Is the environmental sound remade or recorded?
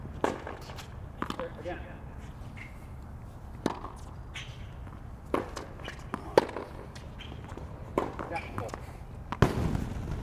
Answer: recorded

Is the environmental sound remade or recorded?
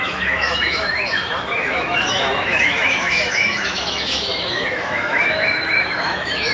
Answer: remade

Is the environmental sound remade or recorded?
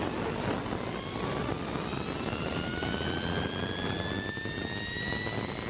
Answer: recorded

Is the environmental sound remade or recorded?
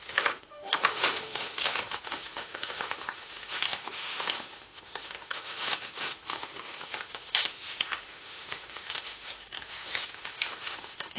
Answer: remade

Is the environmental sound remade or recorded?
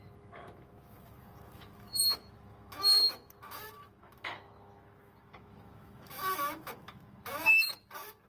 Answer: remade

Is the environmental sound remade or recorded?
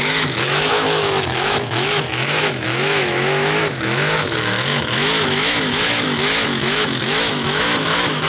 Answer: remade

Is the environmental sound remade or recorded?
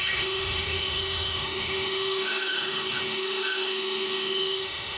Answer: remade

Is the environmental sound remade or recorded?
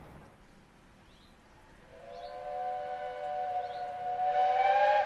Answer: recorded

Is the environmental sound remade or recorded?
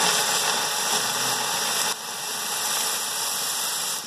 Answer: recorded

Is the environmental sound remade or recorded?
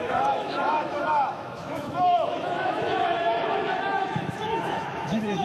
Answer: remade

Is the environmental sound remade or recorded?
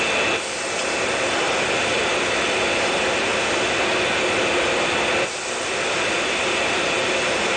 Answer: recorded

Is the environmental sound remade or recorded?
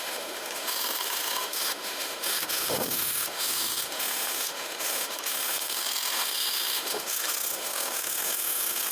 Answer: remade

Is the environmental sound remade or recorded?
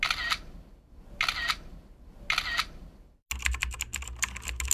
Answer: recorded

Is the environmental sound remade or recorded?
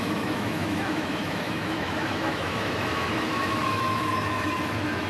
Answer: remade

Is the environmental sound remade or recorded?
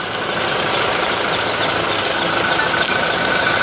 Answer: recorded